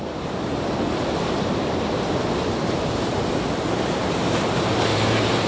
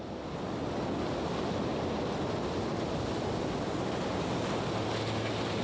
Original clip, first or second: second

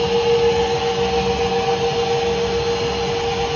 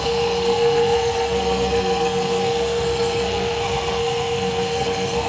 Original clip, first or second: first